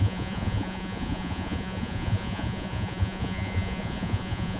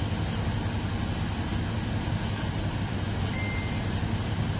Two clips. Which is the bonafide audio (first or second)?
second